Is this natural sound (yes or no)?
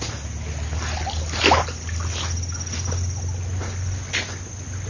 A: yes